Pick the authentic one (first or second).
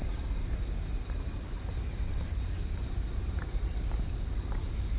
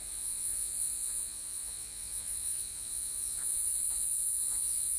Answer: first